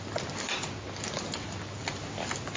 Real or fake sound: real